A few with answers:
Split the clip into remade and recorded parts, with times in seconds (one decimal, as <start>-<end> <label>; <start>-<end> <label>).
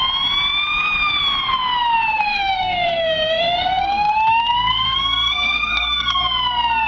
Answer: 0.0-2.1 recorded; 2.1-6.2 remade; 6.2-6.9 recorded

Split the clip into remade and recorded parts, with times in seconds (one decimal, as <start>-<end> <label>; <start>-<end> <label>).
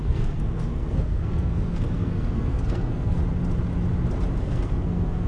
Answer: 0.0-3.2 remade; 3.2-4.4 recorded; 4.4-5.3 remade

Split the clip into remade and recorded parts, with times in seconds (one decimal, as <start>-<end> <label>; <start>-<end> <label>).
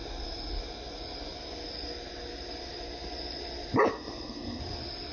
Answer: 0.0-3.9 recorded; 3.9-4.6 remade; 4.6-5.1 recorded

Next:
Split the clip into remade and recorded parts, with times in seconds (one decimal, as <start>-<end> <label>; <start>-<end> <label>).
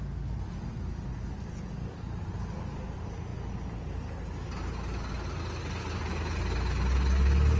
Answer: 0.0-7.6 recorded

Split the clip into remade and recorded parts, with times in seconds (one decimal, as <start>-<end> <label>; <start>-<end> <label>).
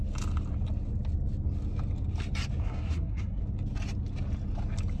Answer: 0.0-2.6 recorded; 2.6-3.4 remade; 3.4-5.0 recorded